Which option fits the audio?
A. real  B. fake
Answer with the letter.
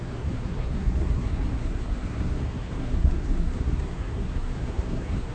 B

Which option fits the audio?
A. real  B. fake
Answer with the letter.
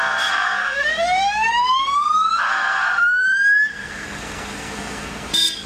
B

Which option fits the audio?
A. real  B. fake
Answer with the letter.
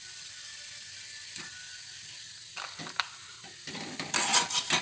A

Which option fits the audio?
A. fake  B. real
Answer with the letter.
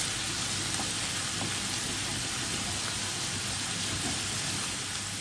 B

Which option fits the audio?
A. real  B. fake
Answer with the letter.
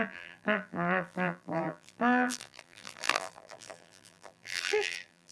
B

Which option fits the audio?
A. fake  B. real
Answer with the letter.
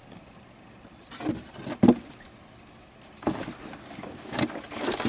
B